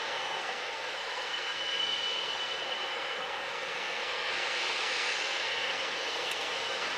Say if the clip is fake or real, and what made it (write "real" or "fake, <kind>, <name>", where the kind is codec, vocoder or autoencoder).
fake, codec, SNAC